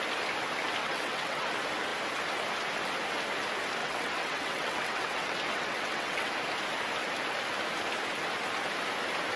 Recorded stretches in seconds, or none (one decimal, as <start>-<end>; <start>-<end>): 0.0-0.8; 1.5-3.8; 6.3-9.4